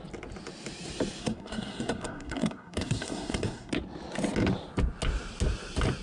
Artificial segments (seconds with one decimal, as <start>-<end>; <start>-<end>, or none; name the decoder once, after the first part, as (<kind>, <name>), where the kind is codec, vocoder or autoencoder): 1.2-3.7 (codec, SNAC)